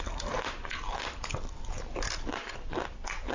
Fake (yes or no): no